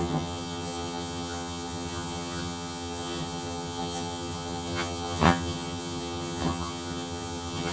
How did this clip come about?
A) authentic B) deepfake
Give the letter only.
B